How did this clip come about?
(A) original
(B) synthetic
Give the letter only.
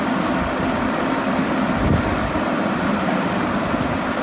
A